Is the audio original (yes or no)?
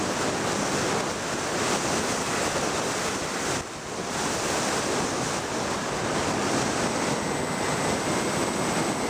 yes